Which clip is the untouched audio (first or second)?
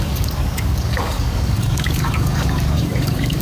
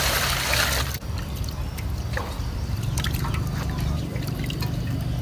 second